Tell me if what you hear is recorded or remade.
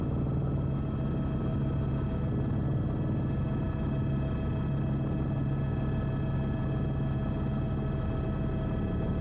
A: recorded